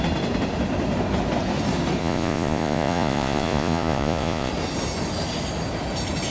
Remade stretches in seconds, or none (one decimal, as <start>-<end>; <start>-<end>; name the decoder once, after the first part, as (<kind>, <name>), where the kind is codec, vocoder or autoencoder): 2.0-4.5 (vocoder, Vocos)